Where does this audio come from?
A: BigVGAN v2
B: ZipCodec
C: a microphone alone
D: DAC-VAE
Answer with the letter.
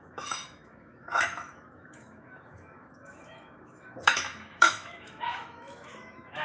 D